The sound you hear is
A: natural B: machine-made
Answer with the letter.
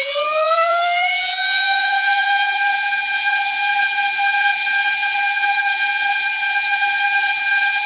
B